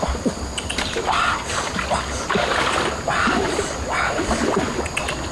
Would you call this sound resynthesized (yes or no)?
no